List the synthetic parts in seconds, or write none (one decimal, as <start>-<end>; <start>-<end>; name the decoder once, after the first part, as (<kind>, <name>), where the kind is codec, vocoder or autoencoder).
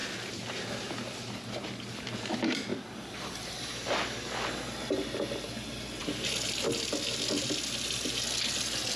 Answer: 0.0-0.7 (vocoder, BigVGAN v2); 2.7-4.2; 6.0-8.1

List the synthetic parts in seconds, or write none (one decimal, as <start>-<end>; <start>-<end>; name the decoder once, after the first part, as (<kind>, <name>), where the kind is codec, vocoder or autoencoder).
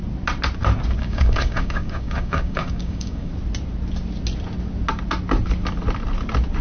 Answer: 1.0-3.3 (codec, DAC)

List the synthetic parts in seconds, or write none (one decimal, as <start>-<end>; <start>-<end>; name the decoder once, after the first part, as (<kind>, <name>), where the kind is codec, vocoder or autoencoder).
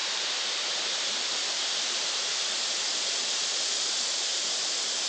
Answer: 0.0-2.3 (vocoder, BigVGAN v2); 3.9-5.1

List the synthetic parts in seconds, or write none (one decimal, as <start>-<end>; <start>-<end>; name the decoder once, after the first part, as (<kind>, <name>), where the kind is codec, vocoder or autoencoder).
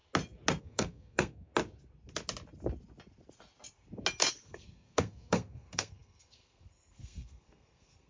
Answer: 0.6-1.5 (codec, SNAC); 4.3-8.1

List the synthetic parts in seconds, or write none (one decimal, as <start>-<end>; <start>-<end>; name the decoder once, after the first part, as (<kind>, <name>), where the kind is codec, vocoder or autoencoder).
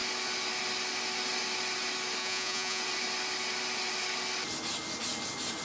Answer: 2.2-2.8 (vocoder, Vocos)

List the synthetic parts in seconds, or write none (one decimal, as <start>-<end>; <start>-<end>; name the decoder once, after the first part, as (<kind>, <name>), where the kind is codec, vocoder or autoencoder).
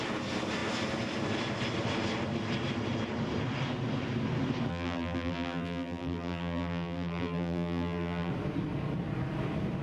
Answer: 4.7-8.3 (vocoder, BigVGAN v2)